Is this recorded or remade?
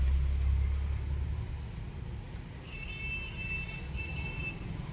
recorded